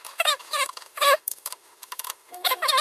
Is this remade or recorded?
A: remade